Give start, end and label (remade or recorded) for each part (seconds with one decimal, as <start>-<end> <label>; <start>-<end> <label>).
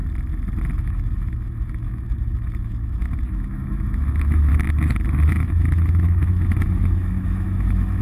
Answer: 0.0-0.8 recorded; 0.8-4.5 remade; 4.5-5.3 recorded; 5.3-8.0 remade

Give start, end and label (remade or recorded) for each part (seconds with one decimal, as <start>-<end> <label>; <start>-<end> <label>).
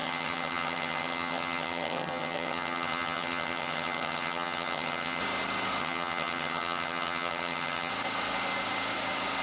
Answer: 0.0-5.2 remade; 5.2-5.8 recorded; 5.8-7.9 remade; 7.9-9.4 recorded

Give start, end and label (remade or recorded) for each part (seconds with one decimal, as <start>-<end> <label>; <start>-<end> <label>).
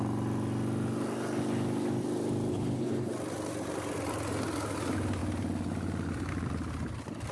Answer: 0.0-2.5 recorded; 2.5-3.1 remade; 3.1-7.3 recorded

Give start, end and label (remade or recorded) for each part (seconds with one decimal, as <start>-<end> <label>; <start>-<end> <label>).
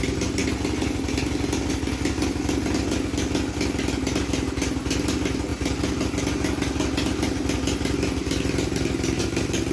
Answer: 0.0-9.7 recorded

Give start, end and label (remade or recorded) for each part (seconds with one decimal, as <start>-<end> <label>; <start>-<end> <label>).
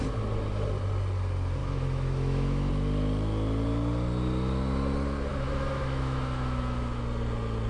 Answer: 0.0-1.6 recorded; 1.6-2.7 remade; 2.7-5.3 recorded; 5.3-7.0 remade; 7.0-7.7 recorded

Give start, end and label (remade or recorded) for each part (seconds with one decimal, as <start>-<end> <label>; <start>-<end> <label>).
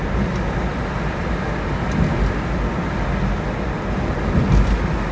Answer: 0.0-5.1 recorded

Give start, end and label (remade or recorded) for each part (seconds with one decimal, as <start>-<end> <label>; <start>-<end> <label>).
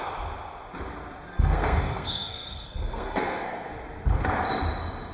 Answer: 0.0-1.3 recorded; 1.3-3.7 remade; 3.7-5.1 recorded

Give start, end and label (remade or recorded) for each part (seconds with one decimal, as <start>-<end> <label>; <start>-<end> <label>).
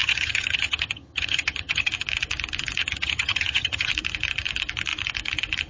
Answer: 0.0-1.9 remade; 1.9-2.8 recorded; 2.8-3.9 remade; 3.9-5.7 recorded